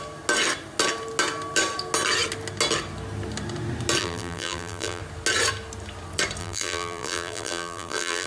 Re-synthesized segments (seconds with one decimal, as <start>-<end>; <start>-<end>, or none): 4.0-5.0; 6.4-8.3